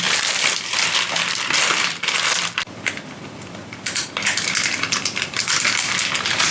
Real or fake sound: fake